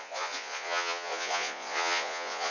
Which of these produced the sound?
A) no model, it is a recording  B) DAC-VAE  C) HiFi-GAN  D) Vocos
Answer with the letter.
D